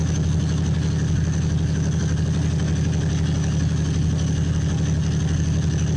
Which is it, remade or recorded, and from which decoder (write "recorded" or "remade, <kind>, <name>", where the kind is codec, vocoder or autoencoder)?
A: recorded